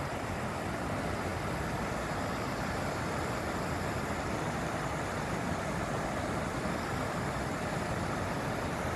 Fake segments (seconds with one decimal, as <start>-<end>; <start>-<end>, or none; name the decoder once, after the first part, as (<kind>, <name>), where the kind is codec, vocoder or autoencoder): none